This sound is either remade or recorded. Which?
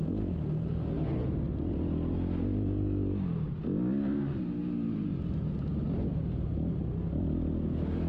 recorded